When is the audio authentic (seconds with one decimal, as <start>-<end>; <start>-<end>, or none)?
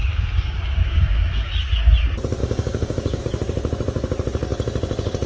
1.5-2.4; 3.2-5.3